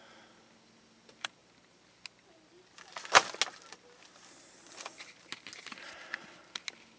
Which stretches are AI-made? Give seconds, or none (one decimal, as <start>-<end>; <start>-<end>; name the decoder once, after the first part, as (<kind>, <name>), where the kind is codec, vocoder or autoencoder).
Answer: none